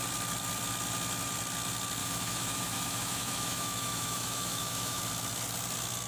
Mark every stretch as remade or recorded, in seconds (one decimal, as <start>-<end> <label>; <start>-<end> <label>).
0.0-2.0 recorded; 2.0-5.0 remade; 5.0-6.1 recorded